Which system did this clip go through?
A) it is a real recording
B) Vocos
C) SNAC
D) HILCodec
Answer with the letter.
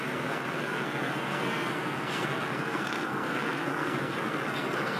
C